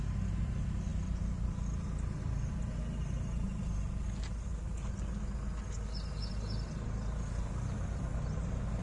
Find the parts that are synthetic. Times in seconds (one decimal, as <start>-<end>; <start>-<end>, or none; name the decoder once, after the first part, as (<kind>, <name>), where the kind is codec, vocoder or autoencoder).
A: none